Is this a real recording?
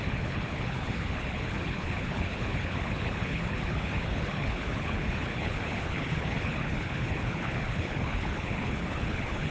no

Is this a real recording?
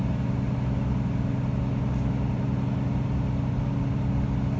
yes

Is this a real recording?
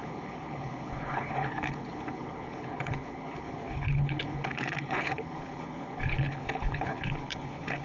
no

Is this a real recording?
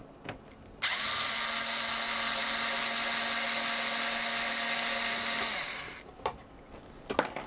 yes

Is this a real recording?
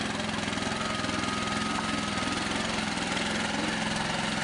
yes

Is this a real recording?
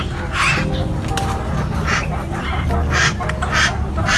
yes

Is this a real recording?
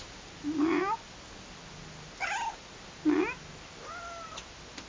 yes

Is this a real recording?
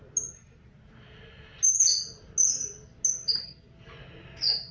yes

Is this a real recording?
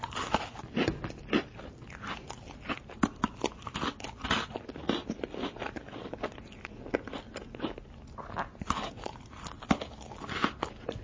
yes